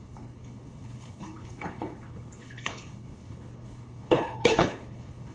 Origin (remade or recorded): remade